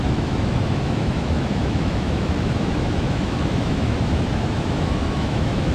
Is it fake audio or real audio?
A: fake